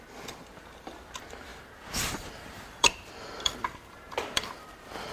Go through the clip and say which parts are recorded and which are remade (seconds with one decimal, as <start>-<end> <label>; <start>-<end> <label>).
0.0-5.1 remade